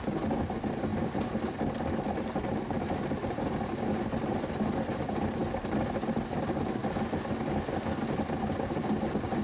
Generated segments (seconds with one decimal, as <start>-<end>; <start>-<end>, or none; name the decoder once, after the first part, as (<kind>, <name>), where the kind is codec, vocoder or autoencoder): 0.0-6.8 (vocoder, BigVGAN v2); 8.4-9.4